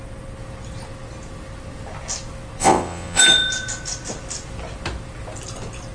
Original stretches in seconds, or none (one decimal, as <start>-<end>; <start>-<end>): 0.0-2.6; 3.2-5.9